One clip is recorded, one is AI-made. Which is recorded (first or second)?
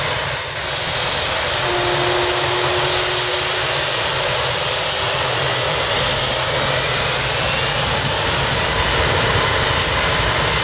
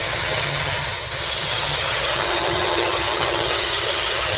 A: first